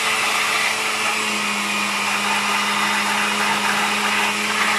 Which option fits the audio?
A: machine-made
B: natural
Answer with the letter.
B